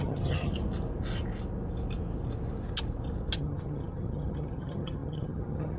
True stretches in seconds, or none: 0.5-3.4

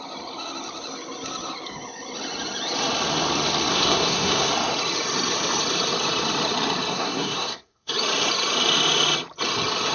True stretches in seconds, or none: 0.0-3.7; 4.5-6.9; 7.9-9.9

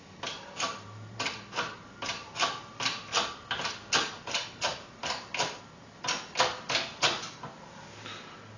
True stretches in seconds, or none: 0.0-8.6